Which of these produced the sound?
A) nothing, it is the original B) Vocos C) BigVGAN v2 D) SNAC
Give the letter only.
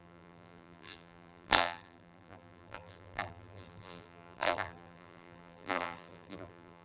C